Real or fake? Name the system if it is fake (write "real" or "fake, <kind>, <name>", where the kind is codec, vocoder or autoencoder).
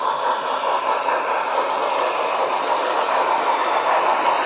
real